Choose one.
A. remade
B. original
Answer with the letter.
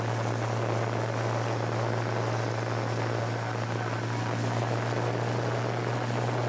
B